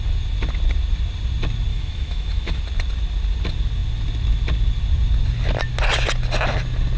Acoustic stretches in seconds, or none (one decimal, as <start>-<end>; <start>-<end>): 0.0-1.7; 2.6-7.0